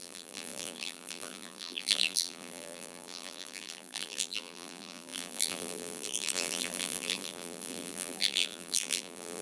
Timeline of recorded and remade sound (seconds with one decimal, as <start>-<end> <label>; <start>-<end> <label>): 0.0-9.4 remade